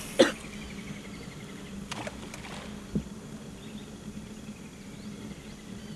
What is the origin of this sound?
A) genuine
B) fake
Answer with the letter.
A